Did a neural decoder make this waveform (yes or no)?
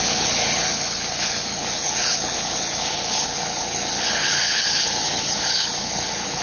yes